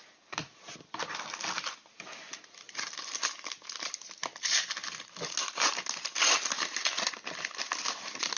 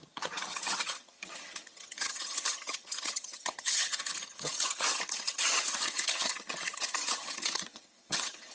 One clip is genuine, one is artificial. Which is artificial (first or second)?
second